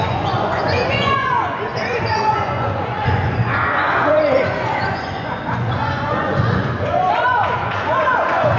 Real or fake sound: fake